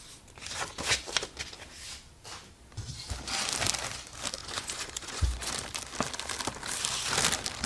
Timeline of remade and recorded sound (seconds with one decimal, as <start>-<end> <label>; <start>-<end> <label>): 0.0-4.4 recorded; 4.4-5.5 remade; 5.5-7.7 recorded